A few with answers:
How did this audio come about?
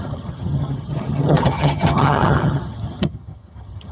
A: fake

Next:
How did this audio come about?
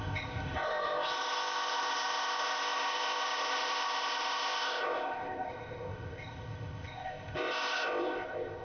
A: fake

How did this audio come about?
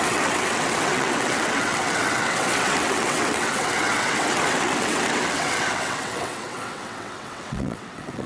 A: fake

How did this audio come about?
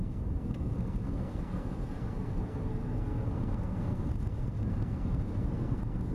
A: fake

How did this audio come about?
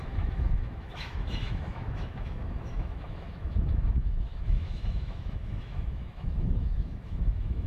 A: fake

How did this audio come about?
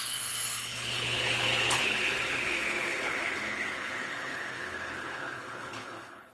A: fake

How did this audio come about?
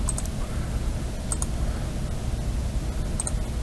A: real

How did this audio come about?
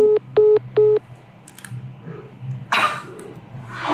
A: real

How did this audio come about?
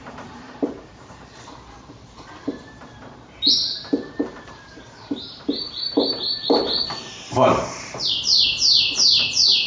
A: fake